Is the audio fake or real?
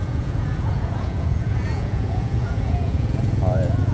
fake